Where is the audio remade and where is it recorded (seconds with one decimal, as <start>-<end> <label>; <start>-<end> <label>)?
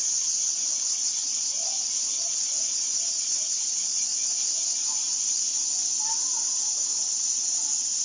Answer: 0.0-1.6 remade; 1.6-2.6 recorded; 2.6-4.1 remade; 4.1-7.3 recorded; 7.3-8.0 remade